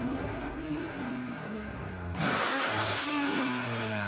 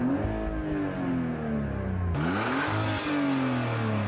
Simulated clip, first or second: first